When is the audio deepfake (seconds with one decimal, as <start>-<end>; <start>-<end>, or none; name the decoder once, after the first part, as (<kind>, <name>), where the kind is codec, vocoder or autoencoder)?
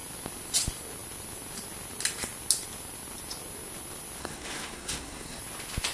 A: 4.2-5.4 (codec, SNAC)